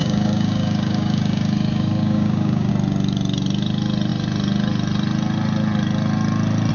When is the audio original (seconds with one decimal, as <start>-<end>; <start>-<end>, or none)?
2.7-6.7